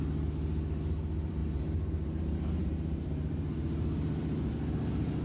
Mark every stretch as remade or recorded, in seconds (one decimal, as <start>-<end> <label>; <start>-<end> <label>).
0.0-1.4 recorded; 1.4-4.5 remade; 4.5-5.2 recorded